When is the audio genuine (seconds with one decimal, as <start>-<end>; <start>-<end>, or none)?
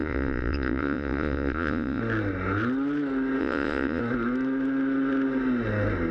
2.0-3.4; 4.0-6.1